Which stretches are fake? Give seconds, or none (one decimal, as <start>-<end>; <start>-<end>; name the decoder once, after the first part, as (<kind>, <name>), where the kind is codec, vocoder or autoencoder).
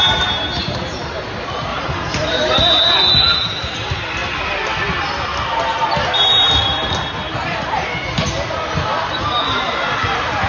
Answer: 0.6-1.1 (vocoder, BigVGAN v2); 1.7-2.8